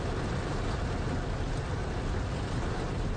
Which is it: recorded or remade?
recorded